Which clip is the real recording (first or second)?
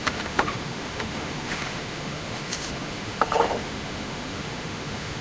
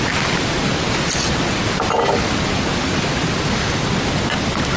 second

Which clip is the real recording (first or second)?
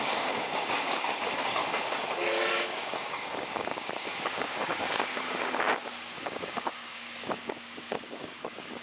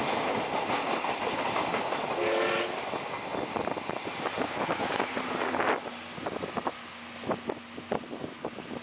second